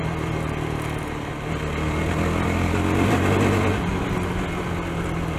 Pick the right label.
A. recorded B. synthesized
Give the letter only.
A